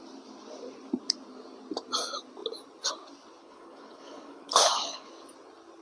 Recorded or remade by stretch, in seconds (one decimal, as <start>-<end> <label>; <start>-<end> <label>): 0.0-3.4 recorded; 3.4-5.1 remade; 5.1-5.8 recorded